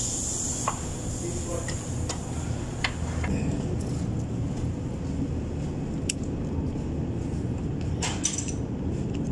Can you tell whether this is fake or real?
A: real